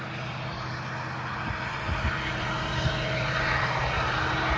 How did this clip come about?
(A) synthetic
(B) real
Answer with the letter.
B